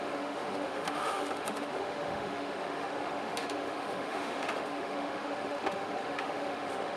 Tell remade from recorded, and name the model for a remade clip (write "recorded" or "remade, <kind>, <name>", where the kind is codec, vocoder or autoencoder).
remade, autoencoder, DAC-VAE